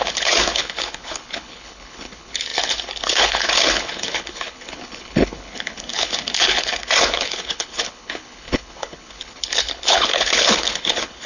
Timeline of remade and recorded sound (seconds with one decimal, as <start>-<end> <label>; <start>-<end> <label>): 0.0-11.3 remade